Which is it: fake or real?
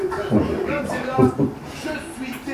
fake